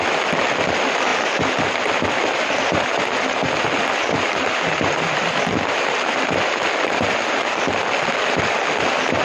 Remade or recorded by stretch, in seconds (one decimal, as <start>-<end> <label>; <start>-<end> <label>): 0.0-9.2 recorded